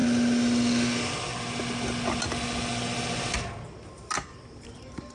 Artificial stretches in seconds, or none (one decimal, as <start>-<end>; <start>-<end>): none

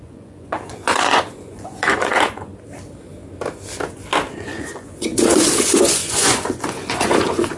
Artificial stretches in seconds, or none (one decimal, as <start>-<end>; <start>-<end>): 0.0-2.5; 4.3-7.6

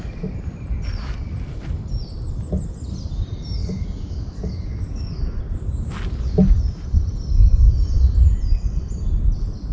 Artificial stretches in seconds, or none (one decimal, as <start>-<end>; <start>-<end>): 3.6-5.4

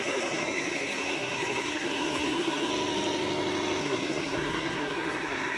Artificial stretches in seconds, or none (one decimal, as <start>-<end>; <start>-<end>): 0.0-2.7; 3.8-5.6

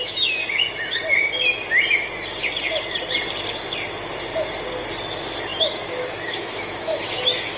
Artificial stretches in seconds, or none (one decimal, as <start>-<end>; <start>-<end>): 0.0-0.4; 5.0-7.6

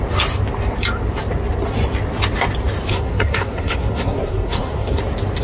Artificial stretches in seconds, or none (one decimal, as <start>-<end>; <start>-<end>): 2.9-5.0